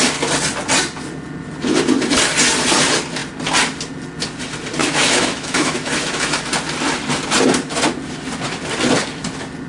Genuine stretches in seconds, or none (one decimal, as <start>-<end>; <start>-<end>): 0.0-4.8; 6.4-9.7